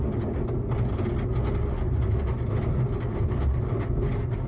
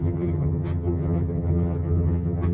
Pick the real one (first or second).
first